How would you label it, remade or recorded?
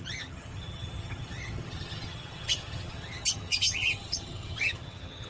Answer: remade